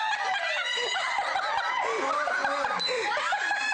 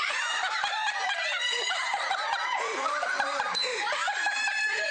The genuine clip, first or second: first